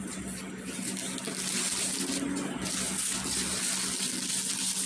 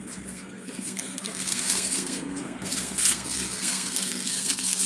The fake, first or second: second